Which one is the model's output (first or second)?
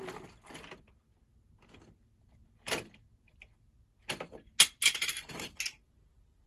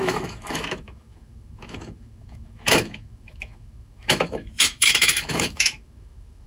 second